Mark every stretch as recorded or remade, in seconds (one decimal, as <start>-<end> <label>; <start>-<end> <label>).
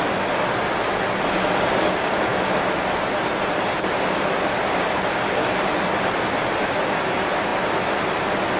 0.0-8.6 recorded